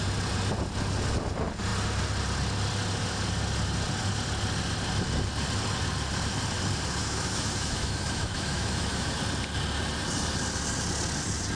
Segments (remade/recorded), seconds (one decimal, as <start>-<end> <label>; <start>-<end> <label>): 0.0-7.0 recorded; 7.0-9.2 remade; 9.2-11.5 recorded